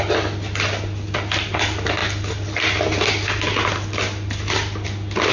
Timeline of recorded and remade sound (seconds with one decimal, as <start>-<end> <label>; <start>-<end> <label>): 0.0-5.3 recorded